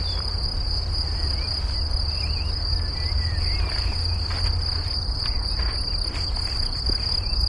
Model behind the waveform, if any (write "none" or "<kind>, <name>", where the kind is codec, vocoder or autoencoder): none